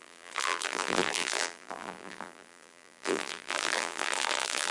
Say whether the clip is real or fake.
fake